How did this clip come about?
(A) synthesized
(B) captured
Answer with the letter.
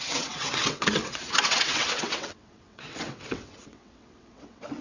A